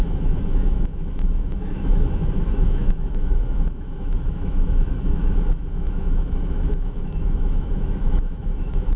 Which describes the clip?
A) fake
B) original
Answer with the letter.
A